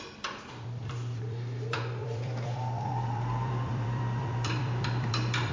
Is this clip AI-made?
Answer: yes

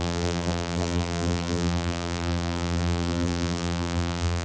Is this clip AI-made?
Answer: yes